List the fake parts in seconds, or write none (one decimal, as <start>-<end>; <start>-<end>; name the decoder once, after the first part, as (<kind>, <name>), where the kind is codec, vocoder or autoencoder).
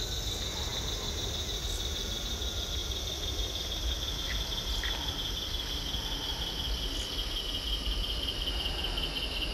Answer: none